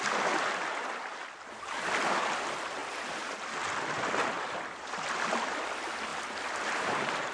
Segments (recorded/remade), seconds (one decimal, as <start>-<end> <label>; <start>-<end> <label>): 0.0-6.1 recorded; 6.1-6.8 remade; 6.8-7.3 recorded